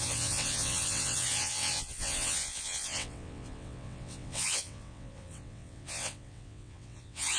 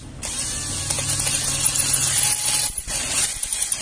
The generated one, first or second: first